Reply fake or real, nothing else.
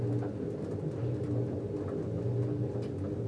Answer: real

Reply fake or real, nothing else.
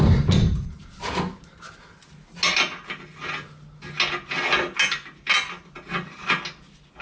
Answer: real